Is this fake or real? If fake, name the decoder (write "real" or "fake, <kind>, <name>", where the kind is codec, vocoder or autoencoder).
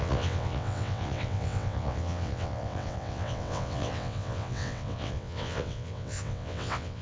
fake, vocoder, WaveNeXt